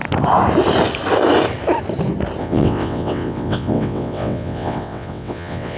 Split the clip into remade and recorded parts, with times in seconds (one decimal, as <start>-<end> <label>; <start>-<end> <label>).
0.0-2.4 recorded; 2.4-5.8 remade